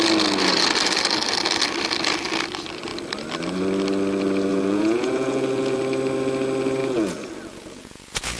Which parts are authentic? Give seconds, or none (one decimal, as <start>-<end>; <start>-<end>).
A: 0.0-4.5; 5.8-6.8